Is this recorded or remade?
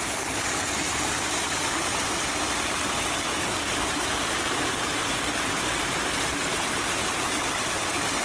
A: recorded